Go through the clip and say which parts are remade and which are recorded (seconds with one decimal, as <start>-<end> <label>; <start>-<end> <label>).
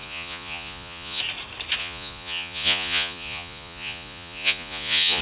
0.0-1.2 remade; 1.2-1.8 recorded; 1.8-5.2 remade